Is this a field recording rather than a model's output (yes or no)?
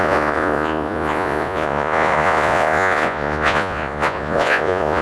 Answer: no